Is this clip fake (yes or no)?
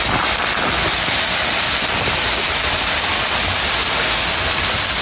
no